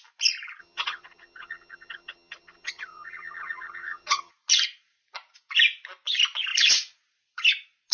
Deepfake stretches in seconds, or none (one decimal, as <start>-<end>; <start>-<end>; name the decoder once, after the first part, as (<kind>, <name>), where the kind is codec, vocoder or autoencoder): 0.6-4.3 (vocoder, HiFi-GAN)